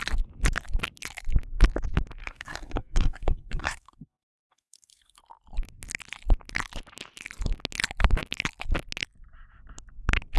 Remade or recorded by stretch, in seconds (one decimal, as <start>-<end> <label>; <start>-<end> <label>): 0.0-2.2 recorded; 2.2-5.2 remade; 5.2-10.4 recorded